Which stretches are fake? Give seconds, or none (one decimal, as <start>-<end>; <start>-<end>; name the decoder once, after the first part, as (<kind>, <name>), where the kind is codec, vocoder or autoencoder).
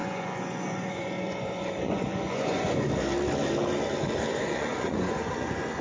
0.0-2.9 (vocoder, Vocos); 4.3-5.8